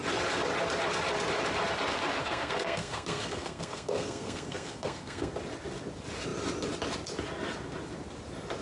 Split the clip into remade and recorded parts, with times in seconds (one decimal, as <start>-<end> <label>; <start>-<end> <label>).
0.0-2.2 recorded; 2.2-5.3 remade; 5.3-8.6 recorded